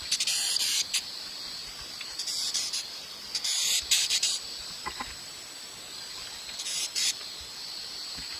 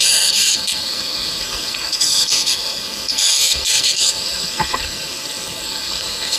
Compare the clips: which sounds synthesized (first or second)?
second